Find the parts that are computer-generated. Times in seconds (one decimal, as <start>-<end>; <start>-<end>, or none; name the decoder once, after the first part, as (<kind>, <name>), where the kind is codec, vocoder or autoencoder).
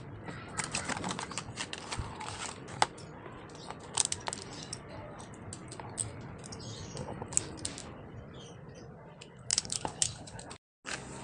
9.5-10.4 (codec, HILCodec)